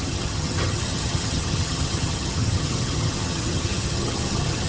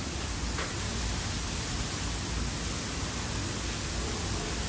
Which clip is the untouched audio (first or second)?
second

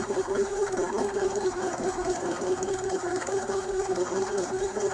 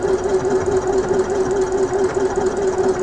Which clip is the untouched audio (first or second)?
second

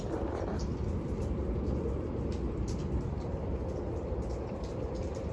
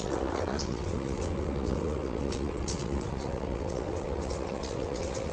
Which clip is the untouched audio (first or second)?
first